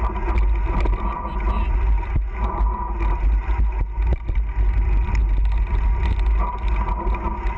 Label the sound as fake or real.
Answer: real